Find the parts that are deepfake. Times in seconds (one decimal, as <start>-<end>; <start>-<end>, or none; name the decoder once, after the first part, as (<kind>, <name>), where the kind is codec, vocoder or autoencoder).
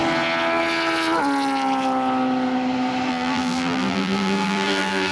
3.1-5.1 (vocoder, BigVGAN v2)